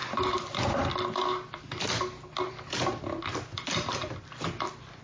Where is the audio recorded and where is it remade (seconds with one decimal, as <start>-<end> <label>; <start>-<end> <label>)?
0.0-5.0 recorded